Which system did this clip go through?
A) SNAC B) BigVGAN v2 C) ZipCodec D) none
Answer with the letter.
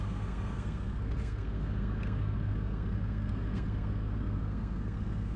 A